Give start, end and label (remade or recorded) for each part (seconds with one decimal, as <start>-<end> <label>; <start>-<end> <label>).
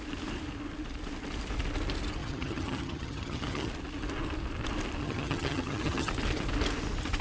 0.0-2.2 recorded; 2.2-3.7 remade; 3.7-5.0 recorded; 5.0-6.1 remade; 6.1-7.2 recorded